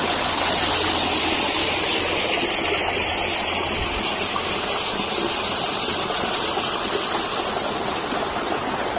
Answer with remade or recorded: recorded